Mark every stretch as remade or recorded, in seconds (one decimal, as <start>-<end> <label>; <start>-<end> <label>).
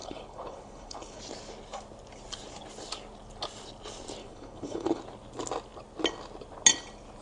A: 0.0-1.2 remade; 1.2-4.2 recorded; 4.2-5.0 remade; 5.0-7.2 recorded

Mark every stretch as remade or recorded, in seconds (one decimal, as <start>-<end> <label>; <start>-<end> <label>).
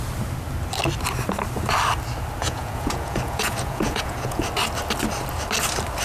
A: 0.0-2.4 recorded; 2.4-4.5 remade; 4.5-6.0 recorded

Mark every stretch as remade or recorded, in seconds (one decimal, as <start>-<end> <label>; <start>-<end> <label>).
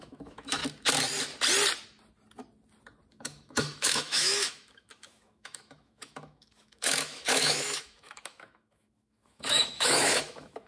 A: 0.0-0.6 remade; 0.6-3.1 recorded; 3.1-10.7 remade